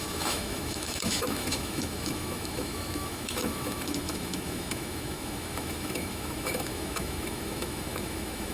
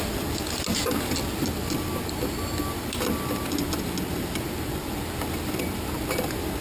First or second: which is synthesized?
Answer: first